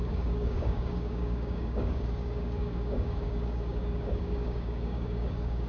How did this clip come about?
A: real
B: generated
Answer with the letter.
B